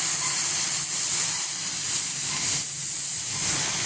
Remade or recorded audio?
recorded